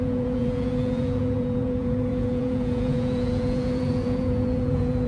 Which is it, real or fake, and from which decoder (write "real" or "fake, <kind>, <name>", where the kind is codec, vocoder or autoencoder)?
fake, vocoder, Vocos